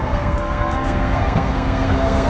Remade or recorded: remade